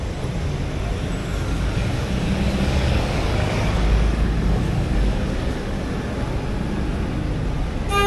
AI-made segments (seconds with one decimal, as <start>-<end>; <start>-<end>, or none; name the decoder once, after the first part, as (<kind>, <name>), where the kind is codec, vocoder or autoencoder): 1.2-5.8 (codec, DAC)